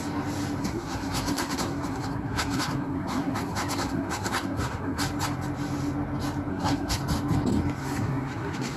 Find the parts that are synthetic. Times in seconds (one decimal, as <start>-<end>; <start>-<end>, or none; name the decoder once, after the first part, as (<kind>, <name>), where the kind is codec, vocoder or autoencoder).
0.6-5.0 (codec, SNAC); 6.5-7.0; 7.8-8.8